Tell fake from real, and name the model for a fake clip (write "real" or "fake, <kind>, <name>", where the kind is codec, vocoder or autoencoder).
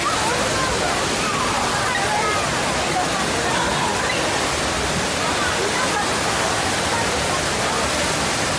real